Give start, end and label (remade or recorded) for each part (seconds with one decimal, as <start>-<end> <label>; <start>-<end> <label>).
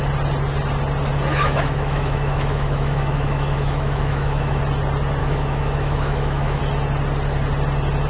0.0-1.3 recorded; 1.3-4.6 remade; 4.6-5.2 recorded; 5.2-6.6 remade; 6.6-8.1 recorded